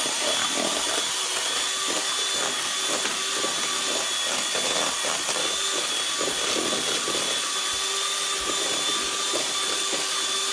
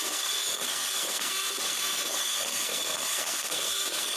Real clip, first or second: first